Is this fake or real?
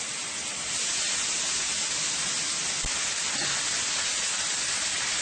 real